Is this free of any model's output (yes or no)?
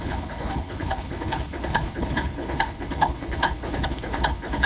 no